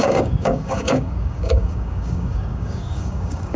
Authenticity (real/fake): fake